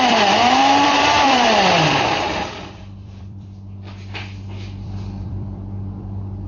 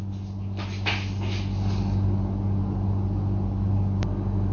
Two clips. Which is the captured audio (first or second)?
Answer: second